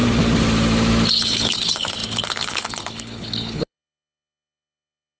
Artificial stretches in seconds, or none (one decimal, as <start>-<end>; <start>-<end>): 1.2-5.2